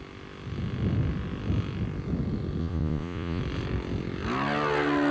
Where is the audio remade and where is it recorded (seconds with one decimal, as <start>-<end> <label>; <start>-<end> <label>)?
0.0-2.6 recorded; 2.6-3.4 remade; 3.4-5.1 recorded